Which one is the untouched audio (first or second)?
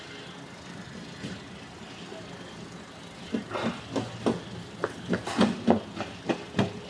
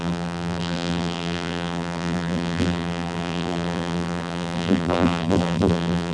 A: first